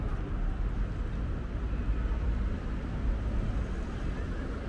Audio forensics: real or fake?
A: real